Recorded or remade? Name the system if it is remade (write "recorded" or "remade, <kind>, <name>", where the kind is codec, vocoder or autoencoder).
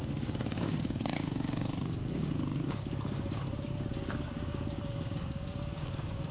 remade, codec, DAC